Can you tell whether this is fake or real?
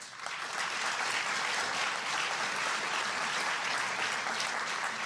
real